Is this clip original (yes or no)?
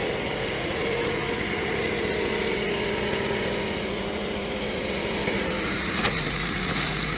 no